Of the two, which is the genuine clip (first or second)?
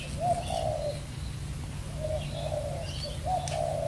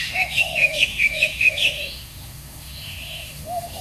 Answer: first